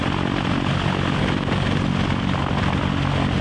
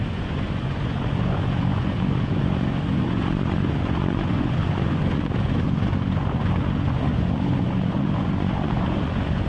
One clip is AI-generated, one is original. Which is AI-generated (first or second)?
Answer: second